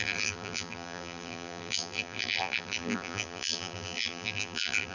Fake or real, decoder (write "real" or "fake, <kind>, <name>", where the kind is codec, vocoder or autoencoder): fake, vocoder, BigVGAN v2